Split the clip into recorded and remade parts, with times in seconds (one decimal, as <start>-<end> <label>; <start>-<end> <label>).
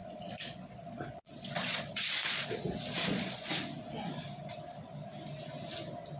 0.0-3.5 remade; 3.5-6.2 recorded